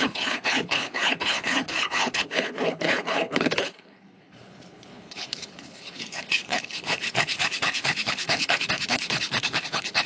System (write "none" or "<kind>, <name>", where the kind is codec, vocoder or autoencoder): codec, HILCodec